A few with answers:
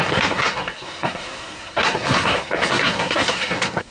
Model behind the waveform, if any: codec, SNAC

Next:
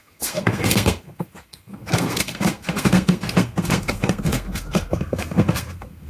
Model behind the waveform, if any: codec, SNAC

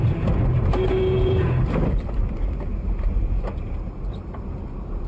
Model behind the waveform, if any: vocoder, BigVGAN v2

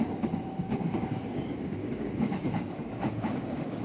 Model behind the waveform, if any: codec, DAC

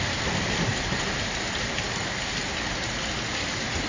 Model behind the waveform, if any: none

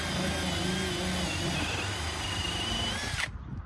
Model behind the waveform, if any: none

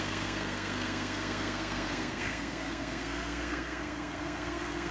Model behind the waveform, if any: codec, SNAC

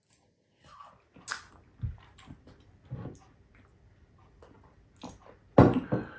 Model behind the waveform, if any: none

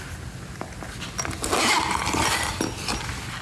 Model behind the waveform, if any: none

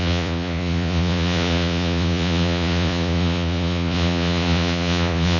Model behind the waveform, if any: vocoder, Vocos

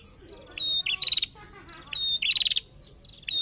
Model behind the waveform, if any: none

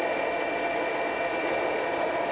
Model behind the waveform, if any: none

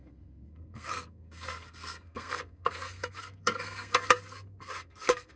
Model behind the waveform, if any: codec, SNAC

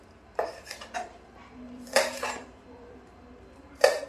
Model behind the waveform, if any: vocoder, BigVGAN v2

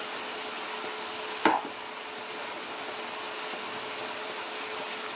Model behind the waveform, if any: none